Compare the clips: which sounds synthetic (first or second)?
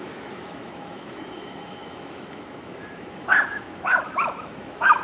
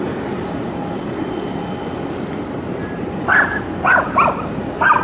first